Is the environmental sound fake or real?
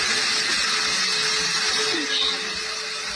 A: real